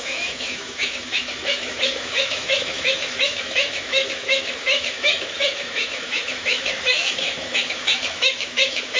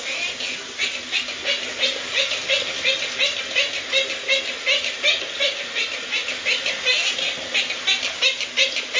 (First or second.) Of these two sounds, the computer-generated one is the first